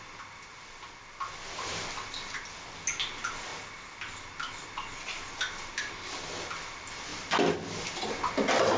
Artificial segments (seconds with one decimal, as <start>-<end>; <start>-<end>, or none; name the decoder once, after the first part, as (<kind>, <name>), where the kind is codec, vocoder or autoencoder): none